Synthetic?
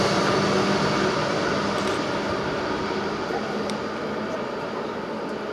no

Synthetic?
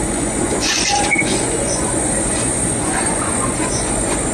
yes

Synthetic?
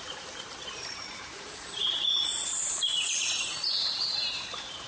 yes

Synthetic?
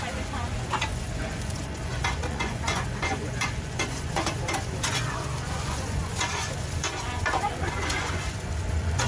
yes